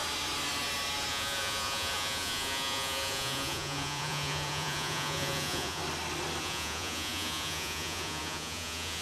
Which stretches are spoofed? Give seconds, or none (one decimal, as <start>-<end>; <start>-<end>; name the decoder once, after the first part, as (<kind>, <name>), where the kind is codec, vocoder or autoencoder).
1.1-5.8 (vocoder, Vocos); 6.4-9.0